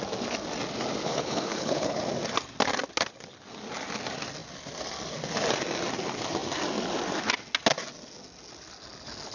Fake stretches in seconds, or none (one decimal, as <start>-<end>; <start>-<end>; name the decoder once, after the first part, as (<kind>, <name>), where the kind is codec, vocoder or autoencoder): 1.0-2.0 (codec, HILCodec)